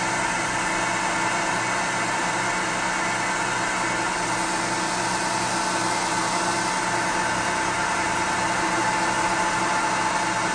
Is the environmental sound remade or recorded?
recorded